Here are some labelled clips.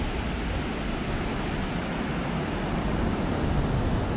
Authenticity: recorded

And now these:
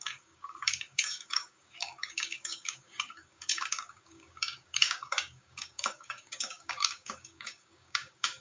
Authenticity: remade